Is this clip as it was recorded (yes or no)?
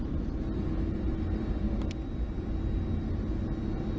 yes